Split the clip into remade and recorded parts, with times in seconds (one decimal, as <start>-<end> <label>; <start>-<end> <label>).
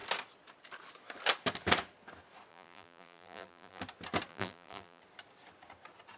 0.0-2.5 recorded; 2.5-3.8 remade; 3.8-4.3 recorded; 4.3-5.0 remade; 5.0-6.2 recorded